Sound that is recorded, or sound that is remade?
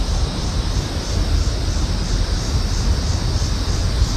recorded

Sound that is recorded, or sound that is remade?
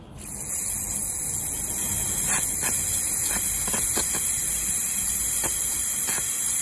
recorded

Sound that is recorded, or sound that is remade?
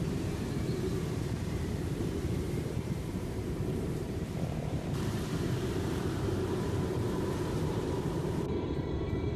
remade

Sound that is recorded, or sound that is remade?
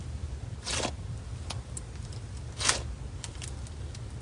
recorded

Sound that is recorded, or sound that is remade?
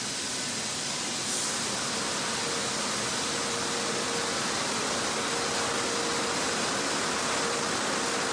recorded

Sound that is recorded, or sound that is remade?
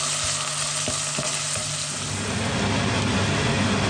recorded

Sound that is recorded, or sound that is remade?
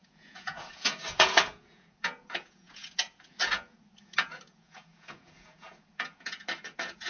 remade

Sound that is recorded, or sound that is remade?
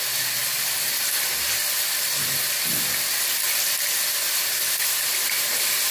recorded